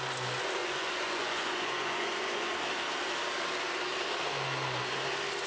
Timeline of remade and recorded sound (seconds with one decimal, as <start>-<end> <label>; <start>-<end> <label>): 0.0-0.6 recorded; 0.6-2.5 remade; 2.5-5.5 recorded